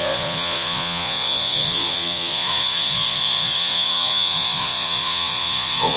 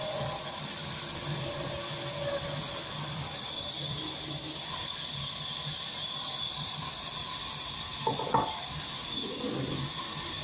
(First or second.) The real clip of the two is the second